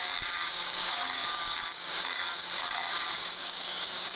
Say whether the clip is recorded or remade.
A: remade